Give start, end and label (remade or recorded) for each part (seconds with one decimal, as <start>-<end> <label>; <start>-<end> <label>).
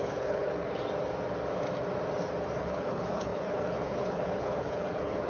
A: 0.0-0.8 remade; 0.8-2.6 recorded; 2.6-5.3 remade